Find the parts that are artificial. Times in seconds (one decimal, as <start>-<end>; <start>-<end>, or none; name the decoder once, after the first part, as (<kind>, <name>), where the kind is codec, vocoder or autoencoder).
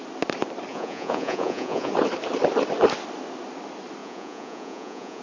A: 0.7-1.9 (vocoder, Vocos); 4.0-5.2